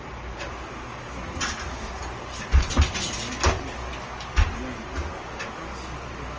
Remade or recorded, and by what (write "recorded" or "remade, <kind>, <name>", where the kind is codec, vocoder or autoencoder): recorded